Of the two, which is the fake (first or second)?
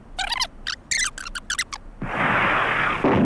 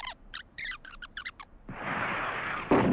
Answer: second